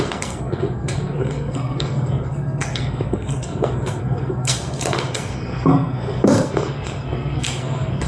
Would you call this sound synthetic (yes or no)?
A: yes